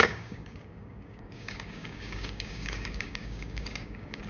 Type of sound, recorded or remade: remade